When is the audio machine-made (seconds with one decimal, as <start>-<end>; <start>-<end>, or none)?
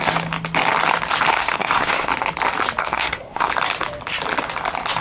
1.3-2.1; 2.8-3.5